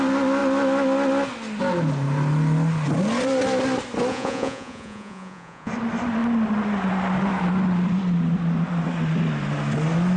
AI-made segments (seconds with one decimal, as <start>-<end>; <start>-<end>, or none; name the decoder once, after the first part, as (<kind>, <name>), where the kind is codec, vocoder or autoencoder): 4.1-5.7 (vocoder, Vocos)